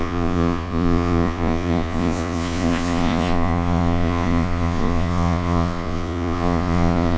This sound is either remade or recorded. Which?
remade